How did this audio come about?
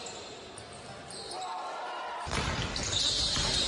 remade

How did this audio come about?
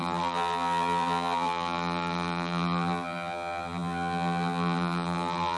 remade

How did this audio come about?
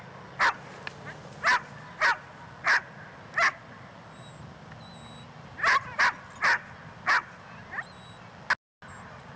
recorded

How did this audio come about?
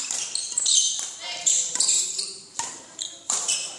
remade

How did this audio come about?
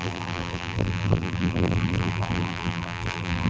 remade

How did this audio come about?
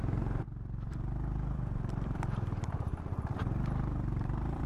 remade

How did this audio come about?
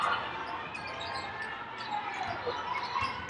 recorded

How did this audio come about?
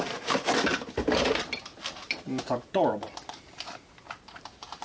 remade